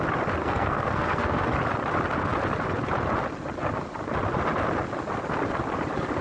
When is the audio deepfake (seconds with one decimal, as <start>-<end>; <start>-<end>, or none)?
0.4-1.4